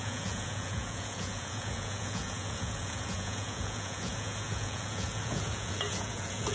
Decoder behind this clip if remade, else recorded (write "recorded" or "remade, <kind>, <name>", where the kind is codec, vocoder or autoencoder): remade, vocoder, Vocos